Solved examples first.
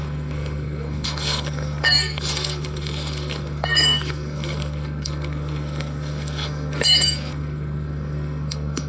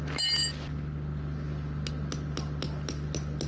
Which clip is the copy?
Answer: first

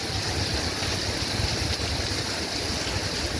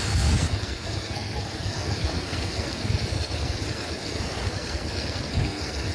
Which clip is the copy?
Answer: second